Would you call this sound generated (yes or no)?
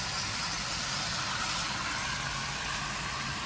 no